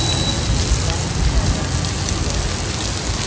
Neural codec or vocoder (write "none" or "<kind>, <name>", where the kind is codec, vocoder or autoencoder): none